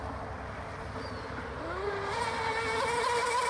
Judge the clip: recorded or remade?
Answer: recorded